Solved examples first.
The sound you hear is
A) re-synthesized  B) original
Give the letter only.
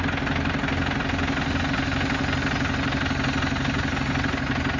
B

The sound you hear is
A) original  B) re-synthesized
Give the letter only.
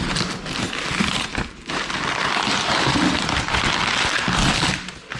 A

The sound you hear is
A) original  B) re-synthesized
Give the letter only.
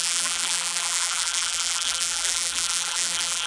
B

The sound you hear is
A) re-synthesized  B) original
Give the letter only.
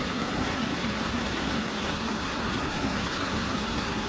A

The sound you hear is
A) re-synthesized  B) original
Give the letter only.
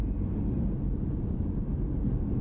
B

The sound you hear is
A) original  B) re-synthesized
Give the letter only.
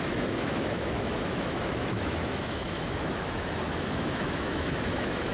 B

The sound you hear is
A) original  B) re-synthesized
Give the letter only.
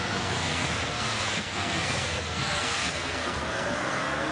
B